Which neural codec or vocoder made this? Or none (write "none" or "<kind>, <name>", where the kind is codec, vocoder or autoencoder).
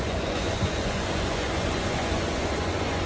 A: vocoder, Vocos